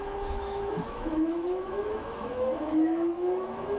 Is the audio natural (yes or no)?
no